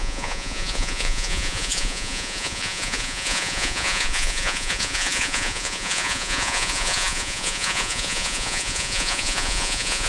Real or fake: fake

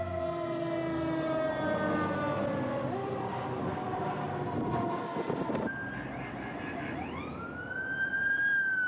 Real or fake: real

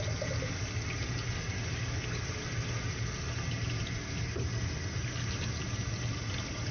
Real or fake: real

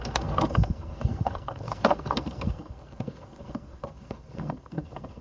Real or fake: fake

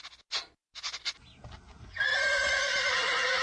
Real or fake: real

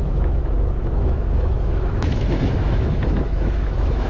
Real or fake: fake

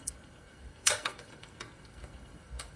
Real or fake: fake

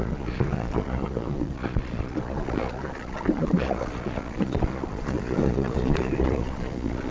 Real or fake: fake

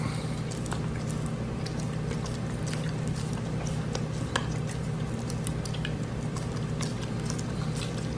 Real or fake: real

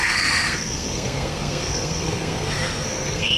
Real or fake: fake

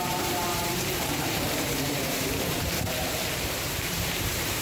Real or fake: fake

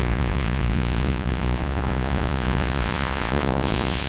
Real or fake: fake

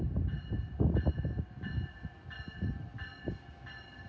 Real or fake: real